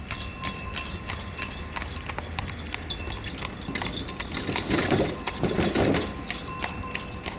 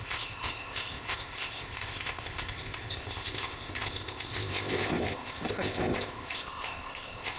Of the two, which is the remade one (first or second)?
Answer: second